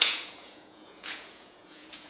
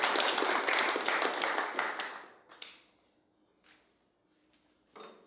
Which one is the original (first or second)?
second